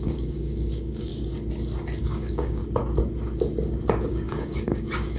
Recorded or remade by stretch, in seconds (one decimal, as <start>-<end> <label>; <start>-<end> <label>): 0.0-1.1 remade; 1.1-2.0 recorded; 2.0-2.6 remade; 2.6-4.1 recorded; 4.1-5.2 remade